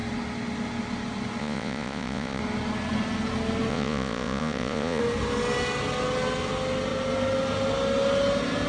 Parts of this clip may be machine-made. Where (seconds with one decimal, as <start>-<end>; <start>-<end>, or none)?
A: 1.4-2.4; 3.7-5.0